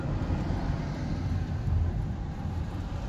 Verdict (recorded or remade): recorded